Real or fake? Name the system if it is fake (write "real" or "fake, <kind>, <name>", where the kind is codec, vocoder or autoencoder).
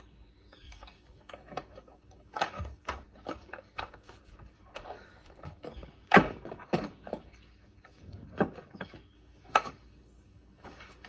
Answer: fake, codec, DAC